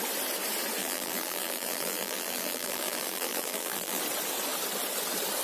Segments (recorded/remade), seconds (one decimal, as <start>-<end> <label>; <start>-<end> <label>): 0.0-0.8 recorded; 0.8-4.0 remade; 4.0-5.4 recorded